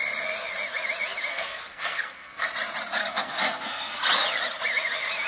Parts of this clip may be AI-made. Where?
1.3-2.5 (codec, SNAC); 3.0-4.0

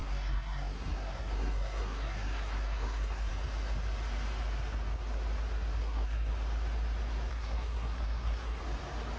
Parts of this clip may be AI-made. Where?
0.0-3.3 (codec, SNAC); 5.8-6.3; 7.3-8.6

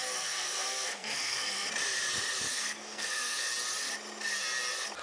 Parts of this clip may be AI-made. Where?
0.0-1.7 (codec, SNAC); 2.5-3.5

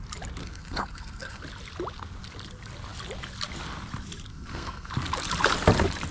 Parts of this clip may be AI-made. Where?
0.4-1.4 (codec, SNAC); 4.3-4.9

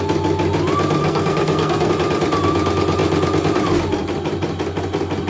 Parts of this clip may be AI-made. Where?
1.0-1.9 (codec, SNAC)

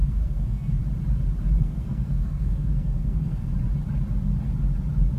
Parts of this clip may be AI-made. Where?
0.0-0.8 (codec, SNAC); 1.6-3.5

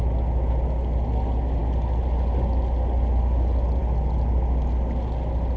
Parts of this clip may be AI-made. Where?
none

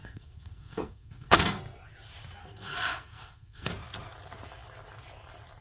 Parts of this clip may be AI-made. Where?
0.0-1.6 (codec, SNAC); 2.4-3.7